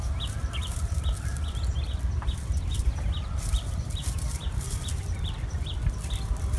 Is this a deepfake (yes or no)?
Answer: yes